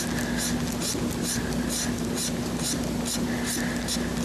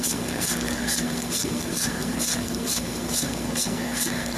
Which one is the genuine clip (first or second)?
first